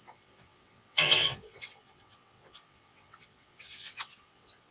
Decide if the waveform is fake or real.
fake